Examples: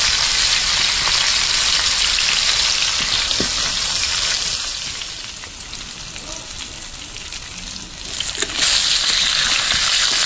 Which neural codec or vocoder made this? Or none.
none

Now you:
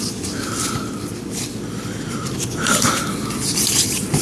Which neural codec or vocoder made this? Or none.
none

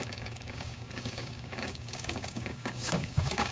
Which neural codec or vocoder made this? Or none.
codec, DAC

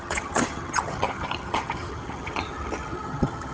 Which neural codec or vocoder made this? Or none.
vocoder, HiFi-GAN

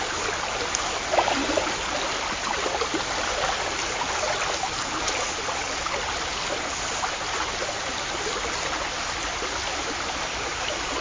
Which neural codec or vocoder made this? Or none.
none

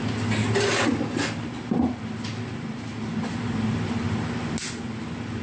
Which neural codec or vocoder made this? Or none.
none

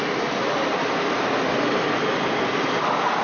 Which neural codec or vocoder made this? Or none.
none